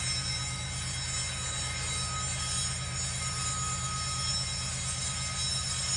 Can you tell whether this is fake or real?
real